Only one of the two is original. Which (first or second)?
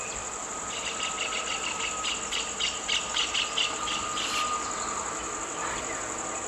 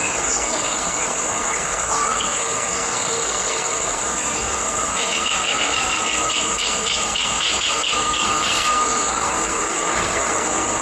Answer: first